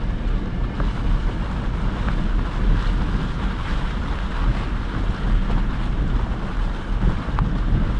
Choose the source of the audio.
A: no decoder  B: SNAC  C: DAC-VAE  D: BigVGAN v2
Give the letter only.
A